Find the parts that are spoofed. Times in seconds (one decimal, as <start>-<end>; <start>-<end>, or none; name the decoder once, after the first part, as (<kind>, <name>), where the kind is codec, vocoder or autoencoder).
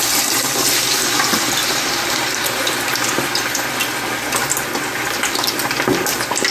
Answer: 0.0-3.8 (vocoder, BigVGAN v2)